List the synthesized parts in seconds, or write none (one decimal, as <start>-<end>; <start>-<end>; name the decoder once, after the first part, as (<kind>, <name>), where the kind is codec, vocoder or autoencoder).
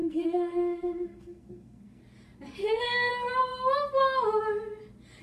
0.0-2.0 (codec, SNAC); 2.6-3.1